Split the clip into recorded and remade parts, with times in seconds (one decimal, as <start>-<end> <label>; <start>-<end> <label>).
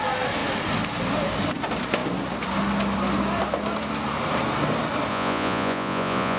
0.0-5.1 recorded; 5.1-6.4 remade